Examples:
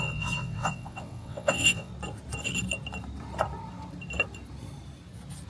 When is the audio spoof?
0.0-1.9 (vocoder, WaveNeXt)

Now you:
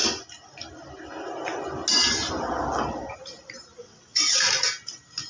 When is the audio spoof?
3.8-4.4 (vocoder, WaveNeXt)

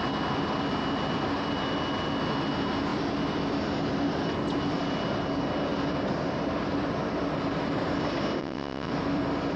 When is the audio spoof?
8.4-8.9 (vocoder, WaveNeXt)

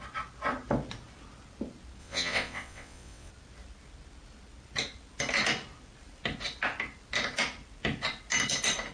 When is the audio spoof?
2.0-3.3 (vocoder, WaveNeXt)